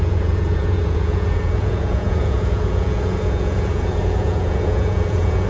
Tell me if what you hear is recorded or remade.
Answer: remade